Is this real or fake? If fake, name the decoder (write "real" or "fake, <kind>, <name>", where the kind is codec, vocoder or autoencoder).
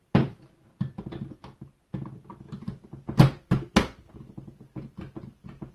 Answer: real